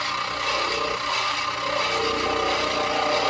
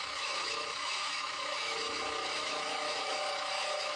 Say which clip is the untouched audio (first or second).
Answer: first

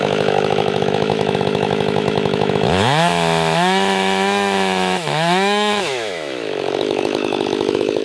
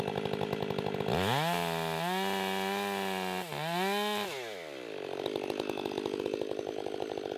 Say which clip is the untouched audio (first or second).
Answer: second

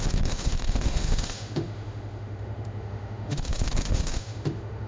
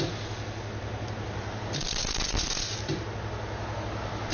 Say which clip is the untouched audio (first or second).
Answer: second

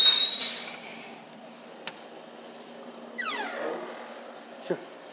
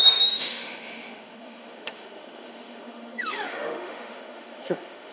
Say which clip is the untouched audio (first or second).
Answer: first